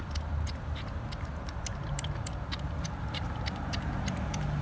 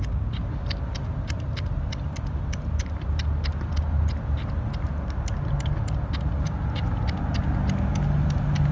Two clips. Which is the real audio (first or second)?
second